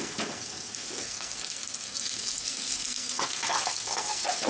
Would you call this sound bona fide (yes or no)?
no